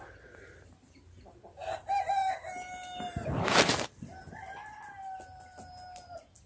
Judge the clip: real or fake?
real